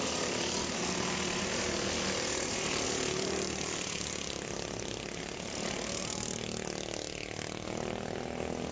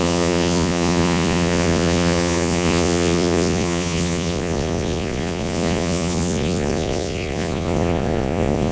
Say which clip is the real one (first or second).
first